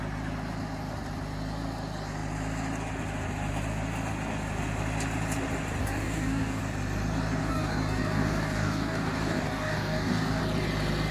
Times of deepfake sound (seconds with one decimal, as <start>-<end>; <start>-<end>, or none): 5.8-6.6; 7.4-10.4